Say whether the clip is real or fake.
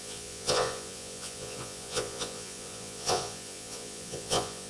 fake